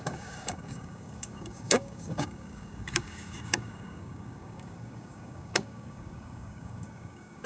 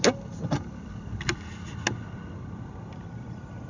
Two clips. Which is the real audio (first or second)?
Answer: second